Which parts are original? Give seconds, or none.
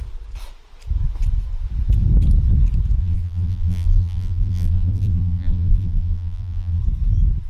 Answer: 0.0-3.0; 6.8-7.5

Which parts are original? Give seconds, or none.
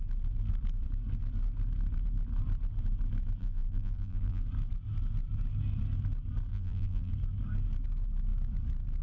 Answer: 0.0-3.4; 4.4-6.5; 7.1-9.0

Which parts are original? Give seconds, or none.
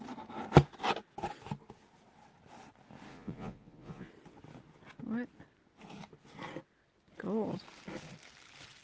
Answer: 0.0-3.1; 4.1-8.8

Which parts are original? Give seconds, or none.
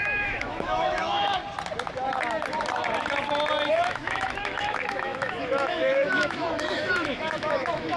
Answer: 1.4-3.7